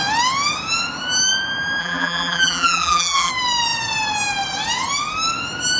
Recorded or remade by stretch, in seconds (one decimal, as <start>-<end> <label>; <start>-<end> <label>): 0.0-1.8 recorded; 1.8-3.3 remade; 3.3-5.8 recorded